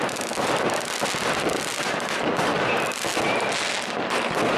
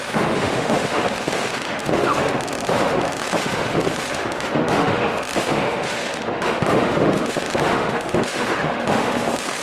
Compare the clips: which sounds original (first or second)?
first